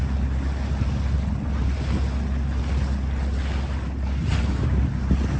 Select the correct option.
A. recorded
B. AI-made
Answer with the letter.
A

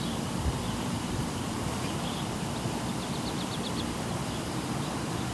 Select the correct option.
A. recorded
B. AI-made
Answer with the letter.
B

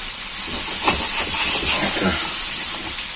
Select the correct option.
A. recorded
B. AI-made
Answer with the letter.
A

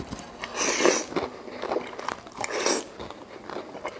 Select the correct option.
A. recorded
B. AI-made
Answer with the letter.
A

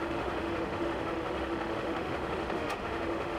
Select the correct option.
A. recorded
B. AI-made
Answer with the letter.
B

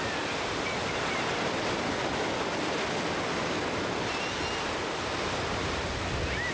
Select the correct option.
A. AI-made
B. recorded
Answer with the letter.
B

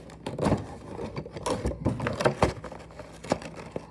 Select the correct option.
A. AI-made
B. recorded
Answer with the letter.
B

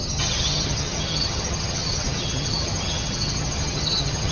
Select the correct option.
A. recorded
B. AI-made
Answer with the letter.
B